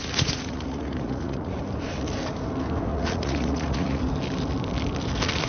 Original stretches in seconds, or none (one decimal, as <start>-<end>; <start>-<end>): 1.6-2.9; 4.0-5.5